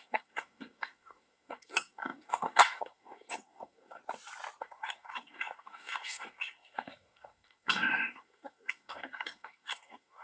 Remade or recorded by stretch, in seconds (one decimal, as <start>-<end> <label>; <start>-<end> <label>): 0.0-4.0 remade; 4.0-4.6 recorded; 4.6-10.2 remade

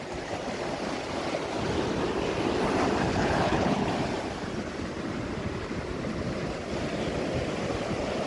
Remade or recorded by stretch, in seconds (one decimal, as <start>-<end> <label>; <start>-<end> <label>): 0.0-3.1 recorded; 3.1-3.9 remade; 3.9-8.3 recorded